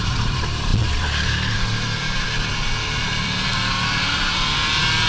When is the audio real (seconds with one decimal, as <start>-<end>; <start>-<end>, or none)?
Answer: none